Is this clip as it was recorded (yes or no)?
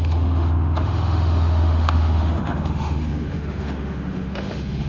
no